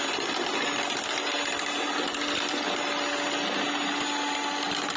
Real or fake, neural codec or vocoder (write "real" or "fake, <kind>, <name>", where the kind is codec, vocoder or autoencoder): real